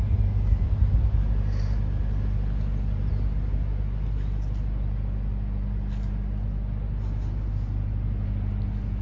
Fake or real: real